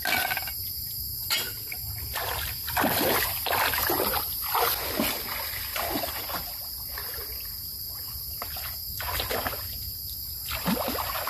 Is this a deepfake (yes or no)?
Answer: no